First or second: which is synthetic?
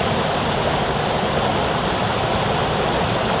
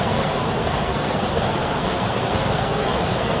second